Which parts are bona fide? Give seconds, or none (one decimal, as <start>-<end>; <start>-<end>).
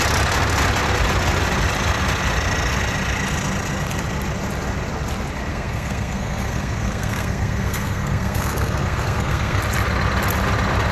0.0-5.5; 9.6-10.9